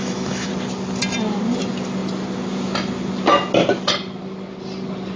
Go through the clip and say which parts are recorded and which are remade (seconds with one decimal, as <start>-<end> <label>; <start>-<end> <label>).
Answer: 0.0-0.5 remade; 0.5-5.2 recorded